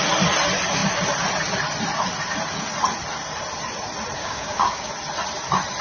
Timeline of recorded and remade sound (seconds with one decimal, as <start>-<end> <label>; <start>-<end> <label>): 0.0-4.2 recorded; 4.2-4.9 remade; 4.9-5.8 recorded